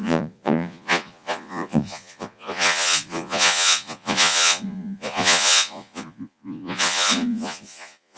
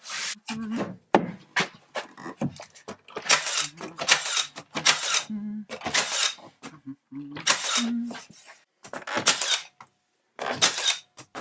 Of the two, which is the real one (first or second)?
second